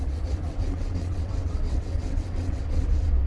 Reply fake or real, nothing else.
fake